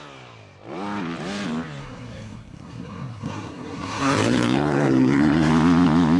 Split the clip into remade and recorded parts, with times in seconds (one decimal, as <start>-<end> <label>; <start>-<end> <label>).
0.0-1.8 recorded; 1.8-5.5 remade; 5.5-6.2 recorded